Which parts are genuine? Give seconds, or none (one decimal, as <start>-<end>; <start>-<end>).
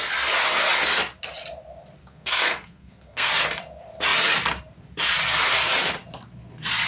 0.0-2.0; 3.3-6.9